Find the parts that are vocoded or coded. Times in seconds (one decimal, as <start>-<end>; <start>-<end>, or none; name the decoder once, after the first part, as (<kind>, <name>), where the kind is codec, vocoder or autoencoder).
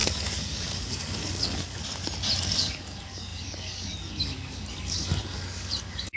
0.0-1.8 (codec, DAC); 2.5-6.2